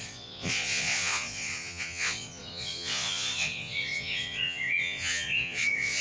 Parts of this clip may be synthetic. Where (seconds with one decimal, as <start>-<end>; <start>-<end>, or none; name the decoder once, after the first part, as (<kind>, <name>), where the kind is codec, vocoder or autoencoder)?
0.0-6.0 (vocoder, Vocos)